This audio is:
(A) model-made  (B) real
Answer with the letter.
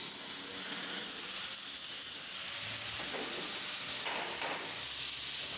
B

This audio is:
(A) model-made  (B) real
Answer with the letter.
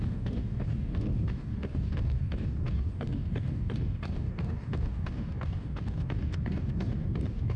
A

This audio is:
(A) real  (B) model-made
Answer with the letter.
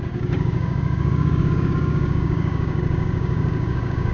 B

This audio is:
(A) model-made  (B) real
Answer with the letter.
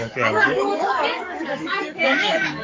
A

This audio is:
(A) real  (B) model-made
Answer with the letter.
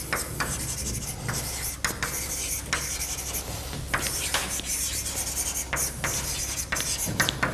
A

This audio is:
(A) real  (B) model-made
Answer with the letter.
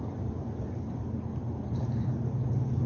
A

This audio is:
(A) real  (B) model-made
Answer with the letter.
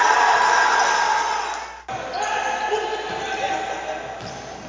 A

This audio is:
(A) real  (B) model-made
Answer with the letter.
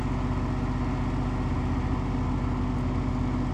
A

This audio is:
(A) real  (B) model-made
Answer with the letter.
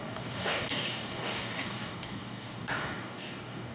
B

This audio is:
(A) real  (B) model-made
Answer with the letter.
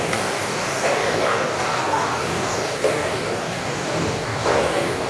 B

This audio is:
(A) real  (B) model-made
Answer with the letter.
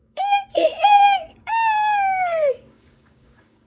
B